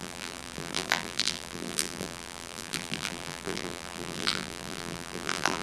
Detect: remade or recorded remade